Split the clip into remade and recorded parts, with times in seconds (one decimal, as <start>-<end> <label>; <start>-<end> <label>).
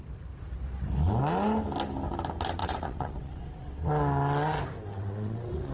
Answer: 0.0-2.6 recorded; 2.6-3.9 remade; 3.9-4.9 recorded; 4.9-5.7 remade